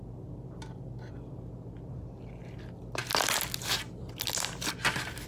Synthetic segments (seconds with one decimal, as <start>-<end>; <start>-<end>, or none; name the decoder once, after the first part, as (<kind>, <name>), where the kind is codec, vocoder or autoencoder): none